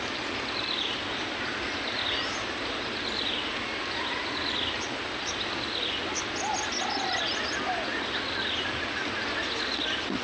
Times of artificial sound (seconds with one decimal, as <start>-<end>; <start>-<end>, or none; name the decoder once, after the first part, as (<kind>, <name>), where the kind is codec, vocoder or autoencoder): none